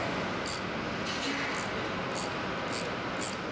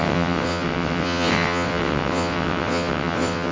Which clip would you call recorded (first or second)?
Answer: first